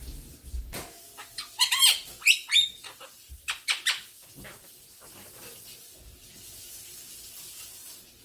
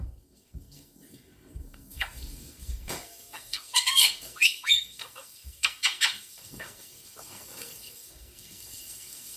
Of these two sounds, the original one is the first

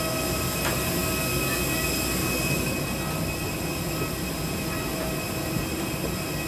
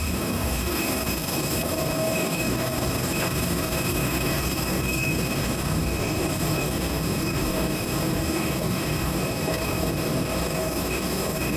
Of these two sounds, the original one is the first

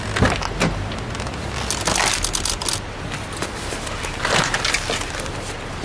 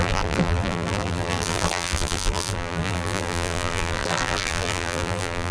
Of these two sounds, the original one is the first